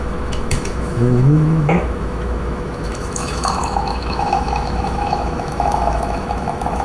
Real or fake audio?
fake